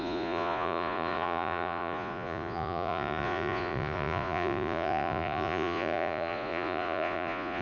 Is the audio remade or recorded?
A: remade